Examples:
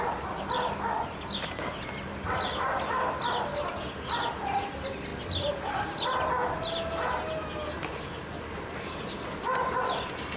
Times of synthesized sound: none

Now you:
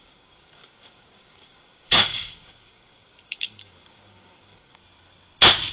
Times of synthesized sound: 0.0-4.8 (codec, DAC)

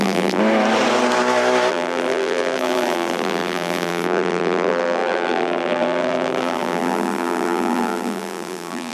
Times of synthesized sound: 0.0-0.4 (vocoder, BigVGAN v2); 1.7-8.9